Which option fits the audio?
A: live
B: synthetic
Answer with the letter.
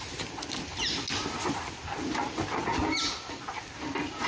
A